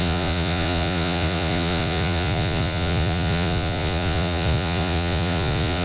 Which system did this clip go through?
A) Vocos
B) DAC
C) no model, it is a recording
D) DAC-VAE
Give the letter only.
A